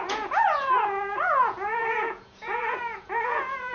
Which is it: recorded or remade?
remade